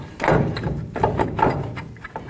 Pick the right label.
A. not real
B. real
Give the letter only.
B